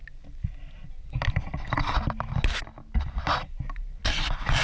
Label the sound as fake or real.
real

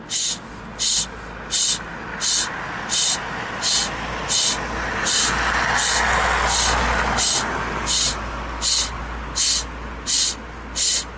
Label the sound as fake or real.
real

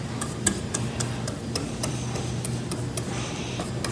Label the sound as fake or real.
real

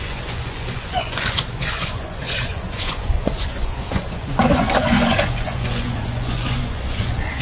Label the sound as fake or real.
fake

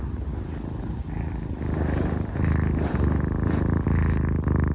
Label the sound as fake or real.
real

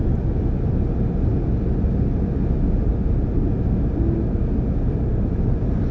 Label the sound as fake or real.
real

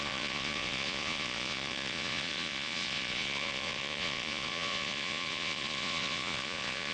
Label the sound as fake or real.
fake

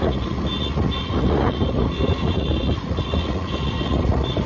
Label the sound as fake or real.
fake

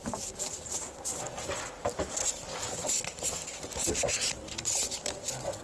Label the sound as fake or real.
real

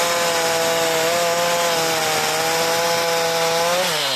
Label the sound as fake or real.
real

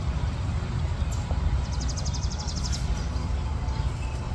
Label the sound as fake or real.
real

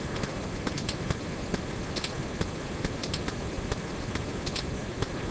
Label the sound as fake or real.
real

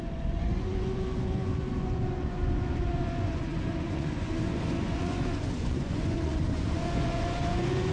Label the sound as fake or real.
fake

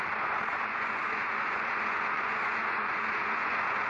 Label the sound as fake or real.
fake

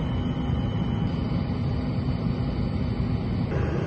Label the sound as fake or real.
real